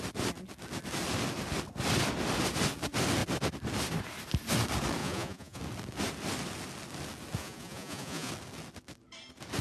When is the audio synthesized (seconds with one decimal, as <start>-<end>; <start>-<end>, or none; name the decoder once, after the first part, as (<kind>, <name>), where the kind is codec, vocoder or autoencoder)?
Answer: 5.0-5.6 (vocoder, Vocos); 7.4-8.3